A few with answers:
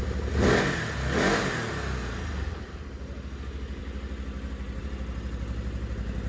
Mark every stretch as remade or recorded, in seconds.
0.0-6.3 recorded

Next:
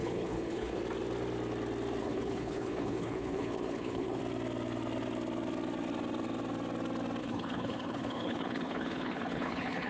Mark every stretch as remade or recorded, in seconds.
0.0-0.8 remade; 0.8-2.0 recorded; 2.0-4.2 remade; 4.2-7.2 recorded; 7.2-9.9 remade